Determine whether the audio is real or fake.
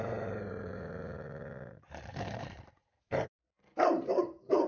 fake